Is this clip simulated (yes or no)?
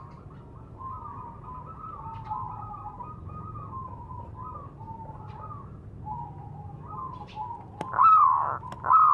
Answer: no